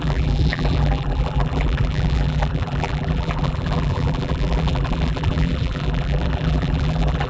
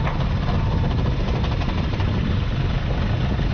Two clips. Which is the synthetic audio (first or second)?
first